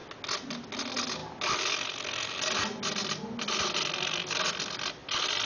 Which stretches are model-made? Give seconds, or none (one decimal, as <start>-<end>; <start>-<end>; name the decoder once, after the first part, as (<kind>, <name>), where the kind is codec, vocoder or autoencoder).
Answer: none